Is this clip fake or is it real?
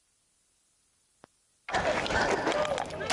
real